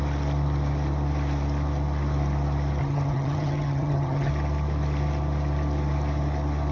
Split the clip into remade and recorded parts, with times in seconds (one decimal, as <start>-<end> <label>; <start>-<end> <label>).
0.0-2.8 recorded; 2.8-4.3 remade; 4.3-6.7 recorded